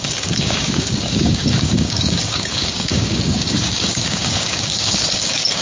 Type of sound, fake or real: fake